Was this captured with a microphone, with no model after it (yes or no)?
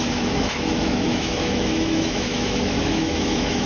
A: no